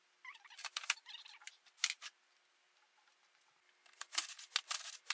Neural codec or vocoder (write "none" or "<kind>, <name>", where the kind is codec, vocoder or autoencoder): none